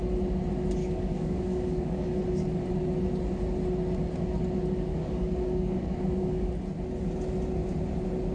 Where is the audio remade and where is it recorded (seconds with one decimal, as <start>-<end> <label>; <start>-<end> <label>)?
0.0-0.8 recorded; 0.8-2.1 remade; 2.1-4.9 recorded; 4.9-6.5 remade; 6.5-8.3 recorded